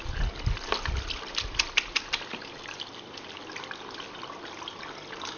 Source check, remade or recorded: recorded